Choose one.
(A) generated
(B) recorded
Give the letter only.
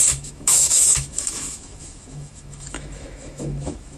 A